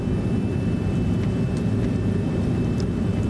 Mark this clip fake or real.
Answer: fake